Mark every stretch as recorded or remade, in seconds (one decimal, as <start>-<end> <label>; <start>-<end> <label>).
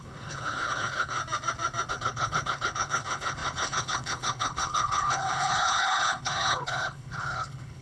0.0-1.2 remade; 1.2-1.9 recorded; 1.9-7.8 remade